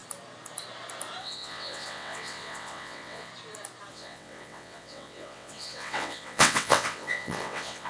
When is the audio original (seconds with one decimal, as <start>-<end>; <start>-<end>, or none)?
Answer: 0.0-1.2; 3.3-3.9